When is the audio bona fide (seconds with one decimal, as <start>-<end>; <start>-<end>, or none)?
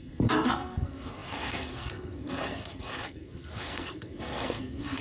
none